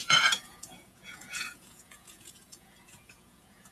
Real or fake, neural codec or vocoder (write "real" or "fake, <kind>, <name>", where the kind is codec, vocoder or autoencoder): fake, vocoder, Vocos